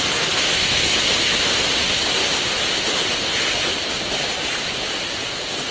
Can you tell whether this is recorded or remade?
recorded